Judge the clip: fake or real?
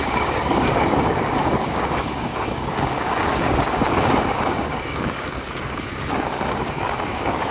fake